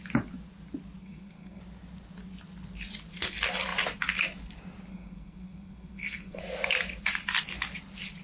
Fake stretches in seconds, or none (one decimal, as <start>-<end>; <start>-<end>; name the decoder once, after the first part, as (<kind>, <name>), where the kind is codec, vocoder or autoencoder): 1.0-1.6 (codec, SNAC); 4.9-6.4